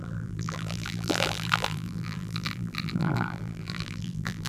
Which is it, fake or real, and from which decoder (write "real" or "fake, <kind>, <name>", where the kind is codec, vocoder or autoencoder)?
fake, vocoder, BigVGAN v2